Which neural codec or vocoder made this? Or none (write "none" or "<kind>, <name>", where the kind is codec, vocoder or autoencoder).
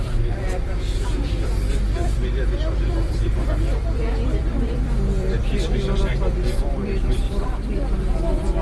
vocoder, BigVGAN v2